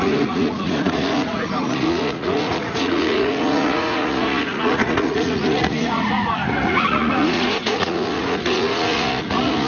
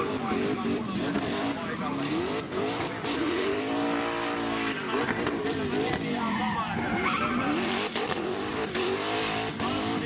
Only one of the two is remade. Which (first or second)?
first